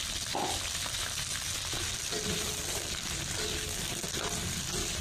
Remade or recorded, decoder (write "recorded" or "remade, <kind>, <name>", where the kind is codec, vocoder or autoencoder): recorded